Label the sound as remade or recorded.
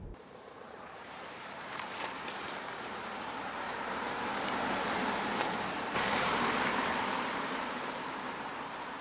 remade